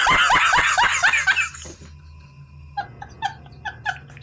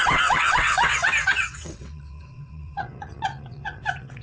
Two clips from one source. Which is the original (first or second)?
first